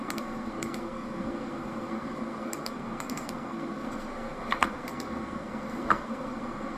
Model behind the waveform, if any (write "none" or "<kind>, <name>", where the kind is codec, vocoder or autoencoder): codec, SNAC